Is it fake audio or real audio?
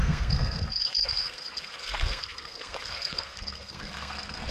fake